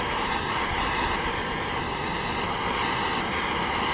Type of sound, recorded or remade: recorded